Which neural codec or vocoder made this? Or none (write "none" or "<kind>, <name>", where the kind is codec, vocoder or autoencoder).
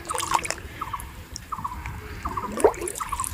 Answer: vocoder, BigVGAN v2